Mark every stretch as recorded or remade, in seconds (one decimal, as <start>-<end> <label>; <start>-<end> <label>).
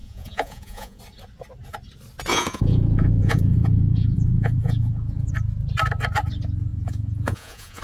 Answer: 0.0-1.0 remade; 1.0-2.3 recorded; 2.3-5.3 remade; 5.3-6.7 recorded; 6.7-7.8 remade